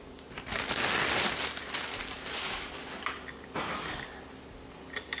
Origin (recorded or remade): recorded